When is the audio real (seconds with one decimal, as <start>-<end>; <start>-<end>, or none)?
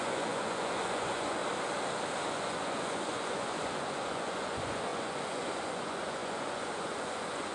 1.4-2.2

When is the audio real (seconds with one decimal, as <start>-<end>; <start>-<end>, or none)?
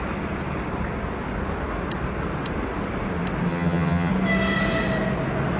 0.0-3.5; 4.1-5.6